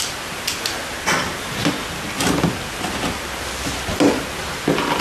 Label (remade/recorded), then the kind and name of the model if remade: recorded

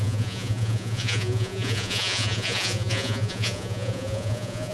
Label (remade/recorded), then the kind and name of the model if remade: remade, vocoder, Vocos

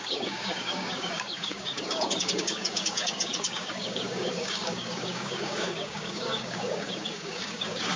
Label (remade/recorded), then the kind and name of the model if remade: remade, codec, DAC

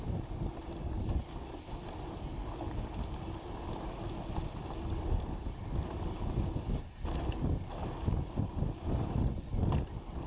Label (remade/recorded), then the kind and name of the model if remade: recorded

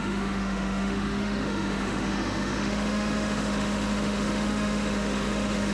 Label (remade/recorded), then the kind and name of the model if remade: remade, autoencoder, DAC-VAE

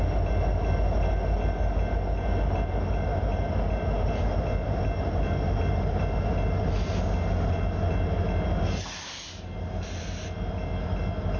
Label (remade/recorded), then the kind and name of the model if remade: recorded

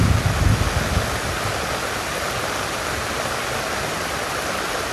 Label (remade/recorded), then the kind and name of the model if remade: recorded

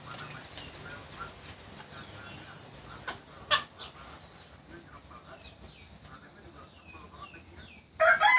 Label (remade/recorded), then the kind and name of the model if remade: recorded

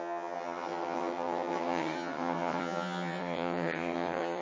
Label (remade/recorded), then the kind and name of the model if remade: remade, vocoder, HiFi-GAN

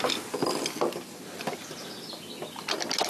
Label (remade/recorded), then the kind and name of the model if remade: recorded